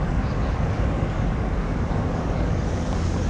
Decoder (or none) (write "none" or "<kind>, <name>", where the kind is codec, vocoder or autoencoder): codec, DAC